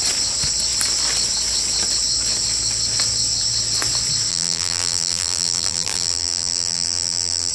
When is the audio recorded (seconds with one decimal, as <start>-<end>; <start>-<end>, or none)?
0.0-4.3